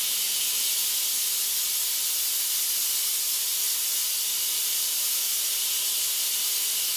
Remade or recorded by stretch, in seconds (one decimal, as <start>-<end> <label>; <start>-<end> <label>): 0.0-7.0 recorded